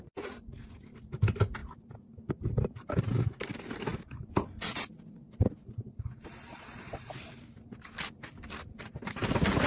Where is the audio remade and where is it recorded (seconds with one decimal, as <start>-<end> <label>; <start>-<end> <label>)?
0.0-9.7 recorded